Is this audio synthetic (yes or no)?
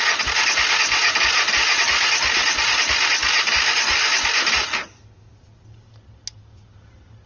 no